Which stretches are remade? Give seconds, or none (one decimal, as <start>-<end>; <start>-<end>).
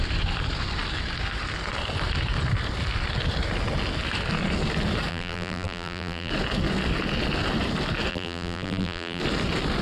5.1-6.3; 8.1-9.2